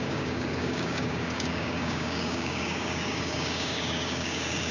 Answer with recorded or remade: remade